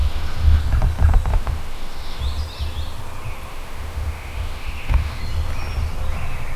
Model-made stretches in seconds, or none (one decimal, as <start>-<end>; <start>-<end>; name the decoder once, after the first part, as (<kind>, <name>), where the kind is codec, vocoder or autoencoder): 0.0-0.6 (autoencoder, DAC-VAE); 1.3-2.2; 3.5-5.2